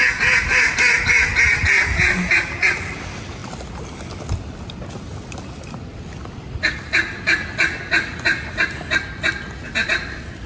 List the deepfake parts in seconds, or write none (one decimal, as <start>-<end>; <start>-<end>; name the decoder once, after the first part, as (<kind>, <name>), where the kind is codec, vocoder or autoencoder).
none